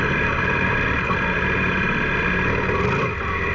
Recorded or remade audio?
recorded